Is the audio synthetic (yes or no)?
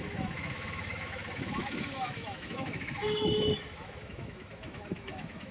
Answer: yes